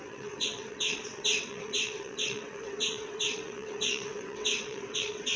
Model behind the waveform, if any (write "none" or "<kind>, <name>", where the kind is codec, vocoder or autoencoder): vocoder, WaveNeXt